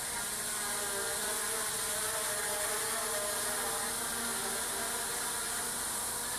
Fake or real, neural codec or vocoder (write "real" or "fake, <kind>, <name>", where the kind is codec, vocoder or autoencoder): real